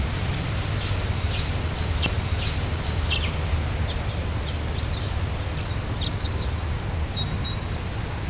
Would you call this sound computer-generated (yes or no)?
no